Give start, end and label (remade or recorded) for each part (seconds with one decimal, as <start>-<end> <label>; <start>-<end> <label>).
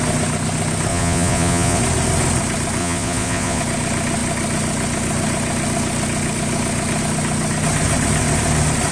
0.0-0.9 recorded; 0.9-1.8 remade; 1.8-2.8 recorded; 2.8-3.6 remade; 3.6-8.9 recorded